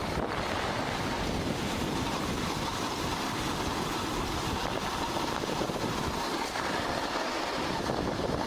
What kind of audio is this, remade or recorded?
remade